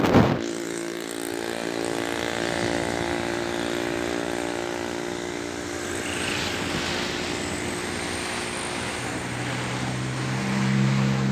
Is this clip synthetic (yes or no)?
no